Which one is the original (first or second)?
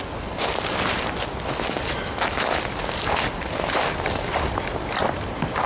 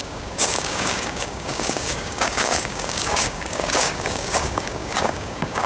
first